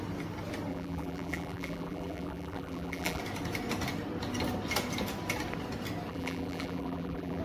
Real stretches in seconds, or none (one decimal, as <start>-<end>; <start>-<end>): 0.0-0.7; 3.2-6.1